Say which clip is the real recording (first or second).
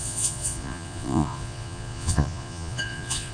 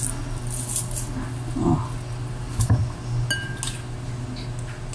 second